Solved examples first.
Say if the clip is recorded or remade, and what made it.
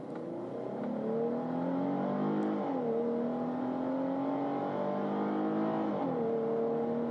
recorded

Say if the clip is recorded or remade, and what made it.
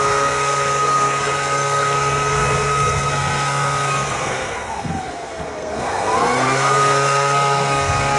remade, codec, SNAC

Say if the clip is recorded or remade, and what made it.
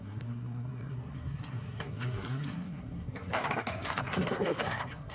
remade, codec, SNAC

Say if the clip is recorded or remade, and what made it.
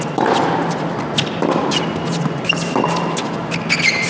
recorded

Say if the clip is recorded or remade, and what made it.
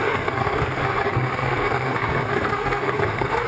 remade, codec, SNAC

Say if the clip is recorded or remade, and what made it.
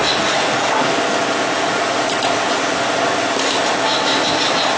recorded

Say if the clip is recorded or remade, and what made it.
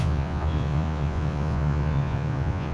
remade, vocoder, Vocos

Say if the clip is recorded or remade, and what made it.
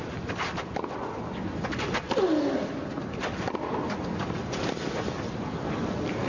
recorded